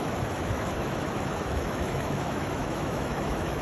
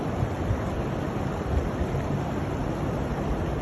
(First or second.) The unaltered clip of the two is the second